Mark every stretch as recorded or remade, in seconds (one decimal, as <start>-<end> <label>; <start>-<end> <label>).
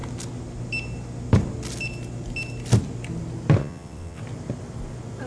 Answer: 0.0-3.6 recorded; 3.6-4.2 remade; 4.2-5.3 recorded